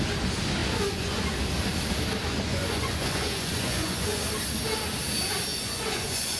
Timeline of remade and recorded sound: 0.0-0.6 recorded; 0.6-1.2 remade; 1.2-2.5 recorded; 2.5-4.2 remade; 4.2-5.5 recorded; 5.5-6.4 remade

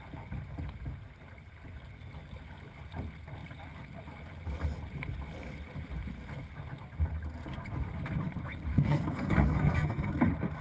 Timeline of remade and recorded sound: 0.0-8.7 recorded; 8.7-10.1 remade; 10.1-10.6 recorded

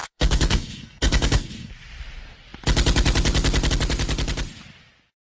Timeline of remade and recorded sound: 0.0-1.7 remade; 1.7-5.4 recorded

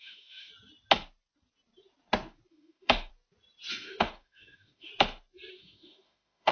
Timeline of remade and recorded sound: 0.0-0.5 remade; 0.5-2.5 recorded; 2.5-3.1 remade; 3.1-3.7 recorded; 3.7-4.9 remade; 4.9-5.5 recorded; 5.5-6.5 remade

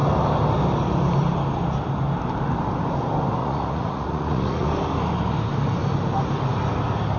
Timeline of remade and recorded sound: 0.0-3.4 recorded; 3.4-4.7 remade; 4.7-7.2 recorded